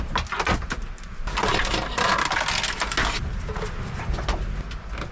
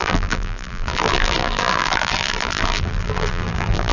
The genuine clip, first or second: first